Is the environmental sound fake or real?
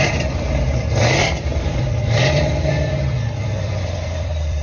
fake